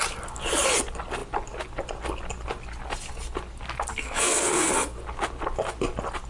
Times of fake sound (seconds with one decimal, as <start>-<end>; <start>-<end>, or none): 3.9-4.7

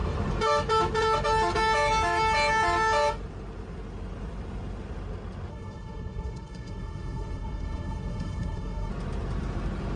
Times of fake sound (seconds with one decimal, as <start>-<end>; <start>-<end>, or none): 5.5-8.9

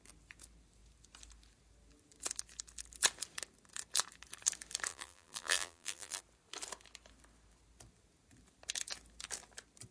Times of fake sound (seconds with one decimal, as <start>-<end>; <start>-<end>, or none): 4.9-6.2